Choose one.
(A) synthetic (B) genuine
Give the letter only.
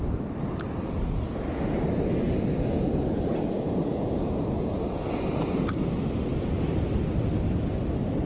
B